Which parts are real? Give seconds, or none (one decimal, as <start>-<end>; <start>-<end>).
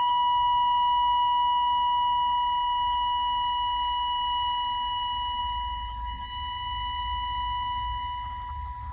0.0-8.9